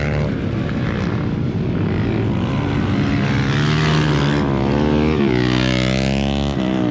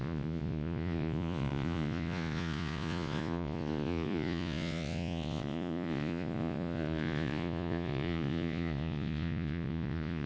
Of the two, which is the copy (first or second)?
second